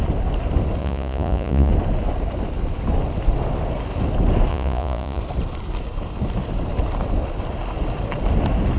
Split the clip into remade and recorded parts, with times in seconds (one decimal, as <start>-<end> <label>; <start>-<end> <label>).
0.0-0.8 recorded; 0.8-1.7 remade; 1.7-4.5 recorded; 4.5-5.2 remade; 5.2-8.8 recorded